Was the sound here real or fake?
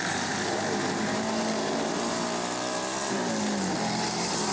fake